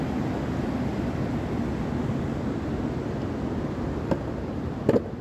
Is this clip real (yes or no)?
yes